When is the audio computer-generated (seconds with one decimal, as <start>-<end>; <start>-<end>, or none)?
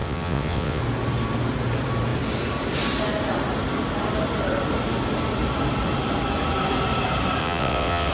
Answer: 0.0-0.8; 7.4-8.1